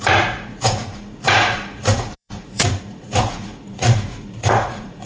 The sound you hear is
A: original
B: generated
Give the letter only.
B